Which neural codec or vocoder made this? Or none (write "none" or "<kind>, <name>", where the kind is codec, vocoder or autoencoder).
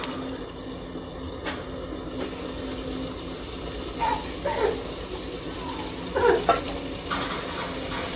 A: none